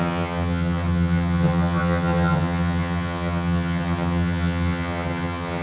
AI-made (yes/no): yes